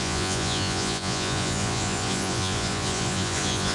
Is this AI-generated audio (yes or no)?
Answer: yes